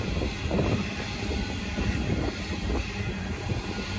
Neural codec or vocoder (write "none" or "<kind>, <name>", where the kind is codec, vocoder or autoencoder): none